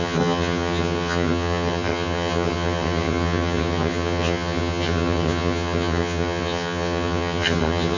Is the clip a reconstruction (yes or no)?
yes